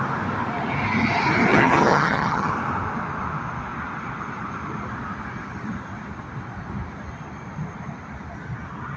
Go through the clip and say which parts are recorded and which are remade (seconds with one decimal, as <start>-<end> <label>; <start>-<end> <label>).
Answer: 0.0-1.5 recorded; 1.5-2.5 remade; 2.5-9.0 recorded